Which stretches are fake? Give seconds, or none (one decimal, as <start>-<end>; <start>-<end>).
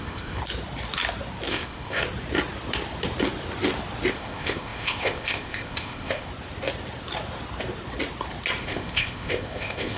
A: 0.0-0.4; 1.5-2.0; 4.1-6.3; 8.6-10.0